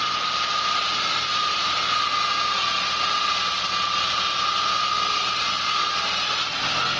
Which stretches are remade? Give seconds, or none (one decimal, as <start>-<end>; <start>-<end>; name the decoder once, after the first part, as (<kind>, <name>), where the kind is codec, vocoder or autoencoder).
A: none